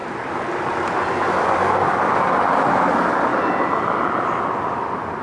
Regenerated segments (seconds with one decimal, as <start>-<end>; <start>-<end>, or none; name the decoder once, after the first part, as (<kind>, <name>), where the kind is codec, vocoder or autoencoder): none